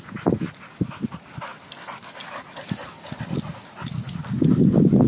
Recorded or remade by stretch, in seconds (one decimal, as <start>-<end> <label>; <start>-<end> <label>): 0.0-5.1 recorded